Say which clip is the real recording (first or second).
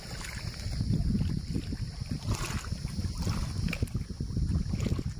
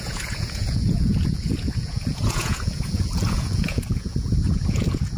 first